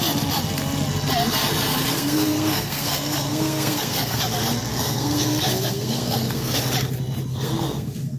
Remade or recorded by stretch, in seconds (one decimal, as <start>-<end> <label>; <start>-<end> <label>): 0.0-1.9 recorded; 1.9-4.2 remade; 4.2-4.7 recorded; 4.7-6.6 remade; 6.6-7.3 recorded; 7.3-8.2 remade